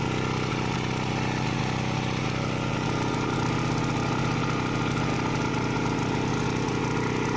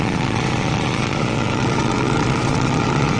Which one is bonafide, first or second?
first